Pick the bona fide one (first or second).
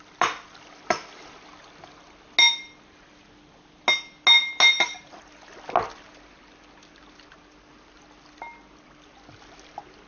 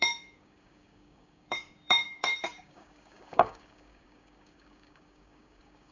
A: first